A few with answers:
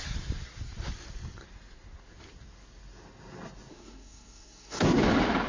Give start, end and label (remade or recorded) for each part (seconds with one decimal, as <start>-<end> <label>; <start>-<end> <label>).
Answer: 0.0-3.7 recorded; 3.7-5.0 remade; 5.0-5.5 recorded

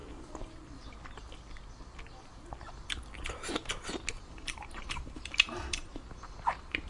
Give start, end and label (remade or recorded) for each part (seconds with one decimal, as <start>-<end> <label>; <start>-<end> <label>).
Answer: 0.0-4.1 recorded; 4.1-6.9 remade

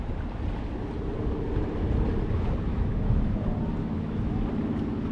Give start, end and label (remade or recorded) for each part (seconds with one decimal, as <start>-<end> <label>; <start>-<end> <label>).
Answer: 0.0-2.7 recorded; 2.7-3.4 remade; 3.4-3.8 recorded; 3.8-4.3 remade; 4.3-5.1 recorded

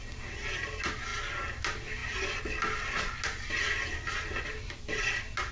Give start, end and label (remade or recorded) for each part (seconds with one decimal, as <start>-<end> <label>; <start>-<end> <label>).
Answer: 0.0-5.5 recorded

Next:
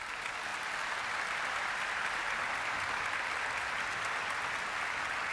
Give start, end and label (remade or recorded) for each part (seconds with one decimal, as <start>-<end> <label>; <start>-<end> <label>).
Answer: 0.0-5.3 recorded

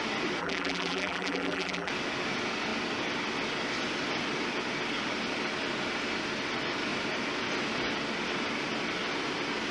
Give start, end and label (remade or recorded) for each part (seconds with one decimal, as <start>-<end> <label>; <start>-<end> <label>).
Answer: 0.0-0.4 recorded; 0.4-1.9 remade; 1.9-9.7 recorded